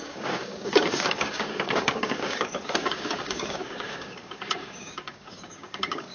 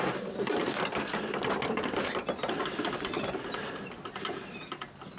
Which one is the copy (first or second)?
first